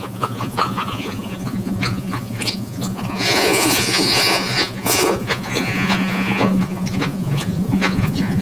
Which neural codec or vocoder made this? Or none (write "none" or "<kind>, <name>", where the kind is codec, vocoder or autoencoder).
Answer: vocoder, Vocos